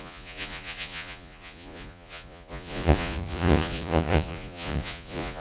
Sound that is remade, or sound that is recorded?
remade